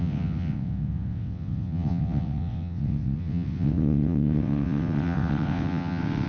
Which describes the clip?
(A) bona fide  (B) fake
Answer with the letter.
B